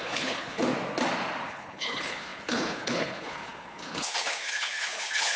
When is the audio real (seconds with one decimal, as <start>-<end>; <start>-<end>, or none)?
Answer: 0.6-1.5